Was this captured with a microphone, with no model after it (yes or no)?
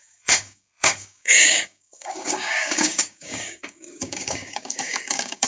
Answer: no